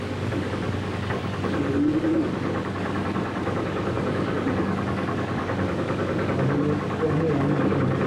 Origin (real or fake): fake